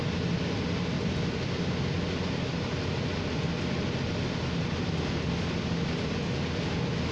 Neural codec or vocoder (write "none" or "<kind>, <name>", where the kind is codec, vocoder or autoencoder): none